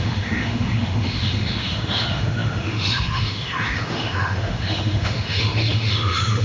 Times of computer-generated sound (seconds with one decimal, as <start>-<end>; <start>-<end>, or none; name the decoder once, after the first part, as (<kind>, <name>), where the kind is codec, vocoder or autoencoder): 0.0-6.4 (autoencoder, DAC-VAE)